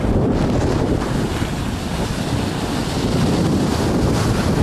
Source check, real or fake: real